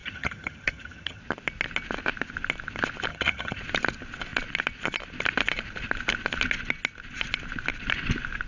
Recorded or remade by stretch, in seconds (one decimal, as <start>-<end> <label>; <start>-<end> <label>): 0.0-1.2 remade; 1.2-3.1 recorded; 3.1-3.6 remade; 3.6-8.5 recorded